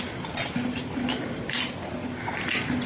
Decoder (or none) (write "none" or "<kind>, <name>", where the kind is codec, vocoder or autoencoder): none